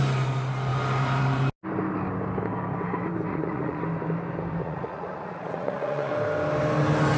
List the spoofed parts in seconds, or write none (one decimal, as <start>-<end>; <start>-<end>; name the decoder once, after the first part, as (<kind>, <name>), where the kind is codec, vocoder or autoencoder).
3.3-3.8 (vocoder, Vocos); 4.6-6.1